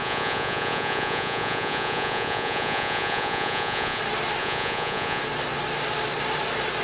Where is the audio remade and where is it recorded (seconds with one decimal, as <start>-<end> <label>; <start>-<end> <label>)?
0.0-4.0 remade; 4.0-4.4 recorded; 4.4-5.2 remade; 5.2-6.8 recorded